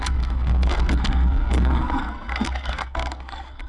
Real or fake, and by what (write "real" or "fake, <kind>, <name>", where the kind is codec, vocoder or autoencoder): fake, codec, SNAC